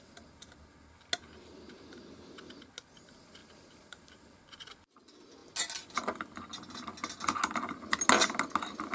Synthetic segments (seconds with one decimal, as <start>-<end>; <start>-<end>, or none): 1.2-2.5; 3.4-4.2